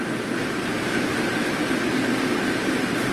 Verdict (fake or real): real